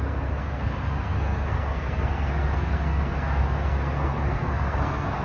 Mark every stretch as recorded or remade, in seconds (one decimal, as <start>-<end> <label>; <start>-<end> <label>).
0.0-5.2 remade